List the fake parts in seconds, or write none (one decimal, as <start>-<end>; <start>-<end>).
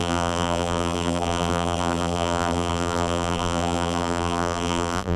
0.0-5.2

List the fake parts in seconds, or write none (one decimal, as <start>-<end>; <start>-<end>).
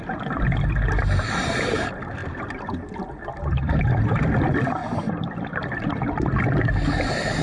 2.2-4.2; 4.8-6.0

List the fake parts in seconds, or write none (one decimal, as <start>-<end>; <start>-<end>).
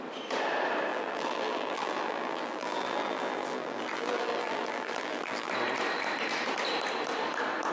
0.9-5.5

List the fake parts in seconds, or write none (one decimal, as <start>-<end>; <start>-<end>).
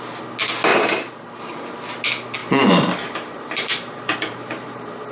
0.7-1.4; 2.4-5.1